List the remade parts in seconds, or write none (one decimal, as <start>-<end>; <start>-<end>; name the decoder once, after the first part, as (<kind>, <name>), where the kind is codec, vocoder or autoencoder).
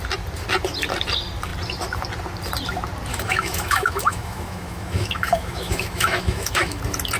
3.1-6.8 (autoencoder, DAC-VAE)